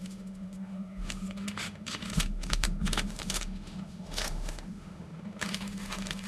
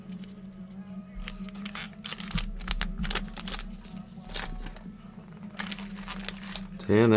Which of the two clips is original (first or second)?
second